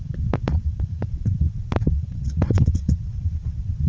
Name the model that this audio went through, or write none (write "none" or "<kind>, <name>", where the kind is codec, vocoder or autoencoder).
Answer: vocoder, WaveNeXt